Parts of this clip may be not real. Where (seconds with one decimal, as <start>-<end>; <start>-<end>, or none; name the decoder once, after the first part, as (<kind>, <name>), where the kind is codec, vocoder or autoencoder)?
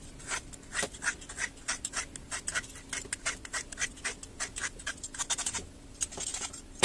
none